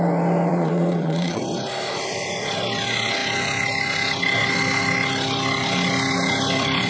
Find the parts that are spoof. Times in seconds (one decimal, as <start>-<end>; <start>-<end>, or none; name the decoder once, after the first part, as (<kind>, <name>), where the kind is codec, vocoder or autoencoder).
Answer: 0.5-1.4 (vocoder, Vocos)